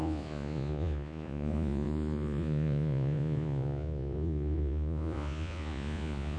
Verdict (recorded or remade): remade